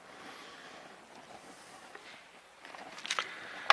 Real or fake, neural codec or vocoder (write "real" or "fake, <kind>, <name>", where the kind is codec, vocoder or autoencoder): real